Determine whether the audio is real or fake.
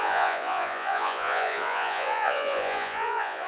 fake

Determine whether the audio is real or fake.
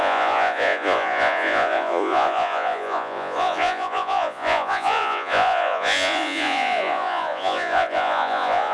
fake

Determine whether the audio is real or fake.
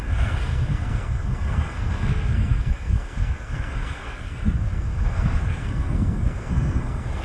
fake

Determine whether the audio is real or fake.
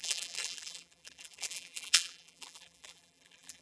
fake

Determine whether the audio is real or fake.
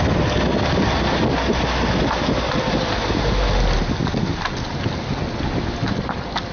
real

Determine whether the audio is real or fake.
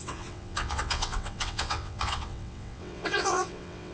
fake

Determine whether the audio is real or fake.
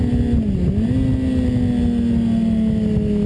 real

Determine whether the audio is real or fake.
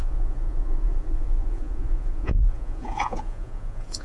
fake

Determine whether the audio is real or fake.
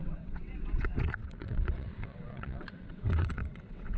fake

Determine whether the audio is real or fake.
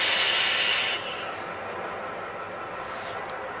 real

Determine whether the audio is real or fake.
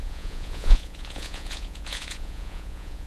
fake